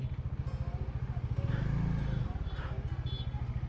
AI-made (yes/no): no